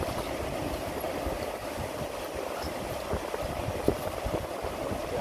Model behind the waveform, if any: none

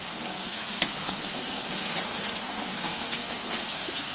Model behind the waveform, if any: codec, SNAC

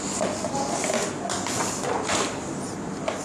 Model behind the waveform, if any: none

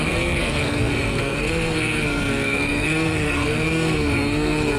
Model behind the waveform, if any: codec, SNAC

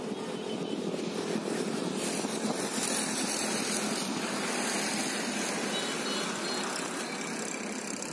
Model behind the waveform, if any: none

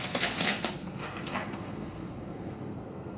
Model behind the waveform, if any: codec, SNAC